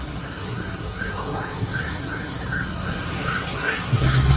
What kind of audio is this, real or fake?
fake